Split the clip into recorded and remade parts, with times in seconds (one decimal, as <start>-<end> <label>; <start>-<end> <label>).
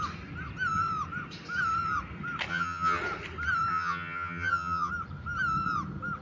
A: 0.0-2.5 recorded; 2.5-3.0 remade; 3.0-3.7 recorded; 3.7-4.9 remade; 4.9-6.2 recorded